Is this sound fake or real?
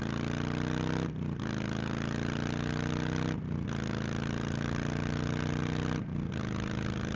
real